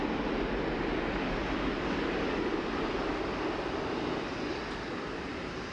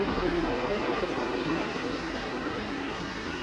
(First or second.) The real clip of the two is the first